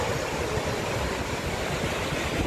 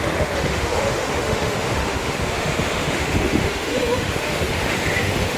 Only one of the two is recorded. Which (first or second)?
first